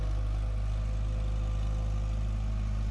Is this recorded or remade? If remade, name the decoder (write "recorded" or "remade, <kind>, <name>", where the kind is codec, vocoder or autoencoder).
recorded